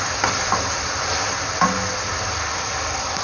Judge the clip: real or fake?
real